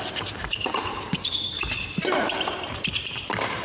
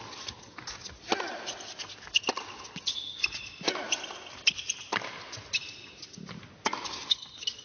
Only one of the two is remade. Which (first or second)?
first